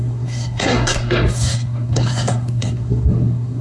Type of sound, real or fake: fake